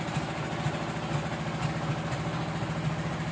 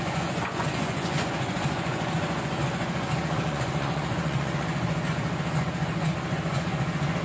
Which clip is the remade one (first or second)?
second